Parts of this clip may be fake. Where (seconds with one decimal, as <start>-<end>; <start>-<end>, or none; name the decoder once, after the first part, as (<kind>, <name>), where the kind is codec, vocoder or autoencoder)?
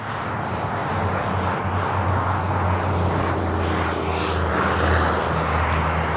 none